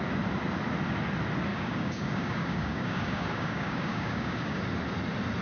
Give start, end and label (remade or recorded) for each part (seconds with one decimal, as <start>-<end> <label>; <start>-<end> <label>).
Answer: 0.0-1.5 recorded; 1.5-4.6 remade; 4.6-5.4 recorded